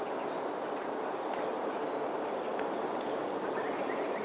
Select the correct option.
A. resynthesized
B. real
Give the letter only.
B